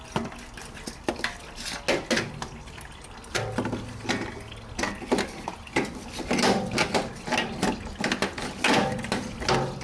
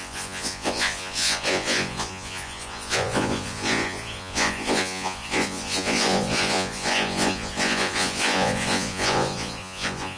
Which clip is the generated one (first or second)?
second